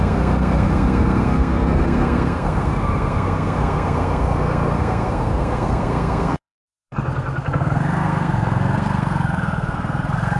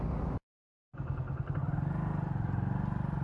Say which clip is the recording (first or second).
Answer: second